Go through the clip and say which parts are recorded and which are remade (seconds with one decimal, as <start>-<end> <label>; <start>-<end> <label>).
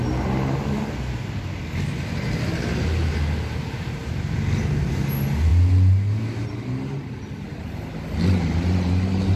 0.0-9.4 recorded